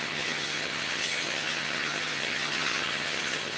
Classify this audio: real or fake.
fake